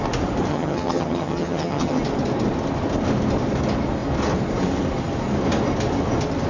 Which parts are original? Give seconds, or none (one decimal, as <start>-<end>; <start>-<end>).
0.0-0.5; 2.0-6.5